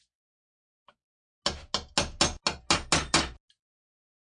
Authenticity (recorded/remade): recorded